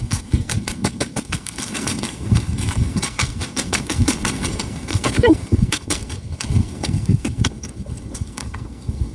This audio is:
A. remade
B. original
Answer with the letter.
A